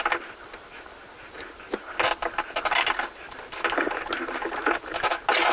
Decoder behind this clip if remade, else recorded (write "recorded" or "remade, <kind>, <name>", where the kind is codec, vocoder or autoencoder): recorded